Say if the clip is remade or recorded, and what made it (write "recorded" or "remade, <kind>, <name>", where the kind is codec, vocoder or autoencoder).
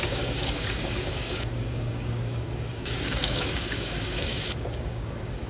remade, codec, DAC